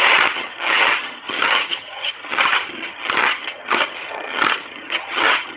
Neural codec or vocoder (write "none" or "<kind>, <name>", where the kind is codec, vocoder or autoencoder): vocoder, HiFi-GAN